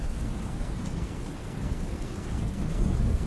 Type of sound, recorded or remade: remade